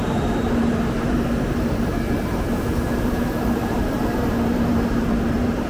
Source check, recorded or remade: remade